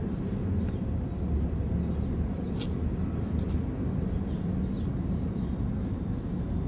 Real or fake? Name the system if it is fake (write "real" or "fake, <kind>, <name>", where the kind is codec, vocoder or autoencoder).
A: real